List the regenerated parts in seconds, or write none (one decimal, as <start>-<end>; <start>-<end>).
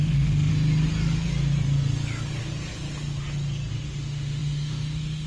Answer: 0.0-0.5; 3.7-5.3